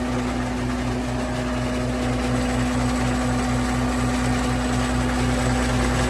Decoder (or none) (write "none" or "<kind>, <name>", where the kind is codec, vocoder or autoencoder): none